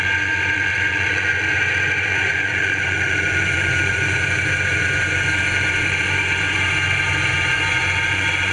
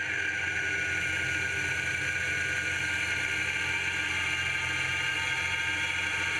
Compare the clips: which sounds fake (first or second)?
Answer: first